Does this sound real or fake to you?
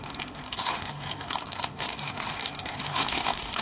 fake